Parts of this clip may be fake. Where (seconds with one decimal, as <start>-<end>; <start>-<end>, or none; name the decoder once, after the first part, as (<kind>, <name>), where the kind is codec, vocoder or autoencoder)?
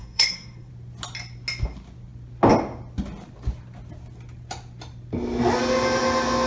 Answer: 0.0-0.7 (codec, SNAC)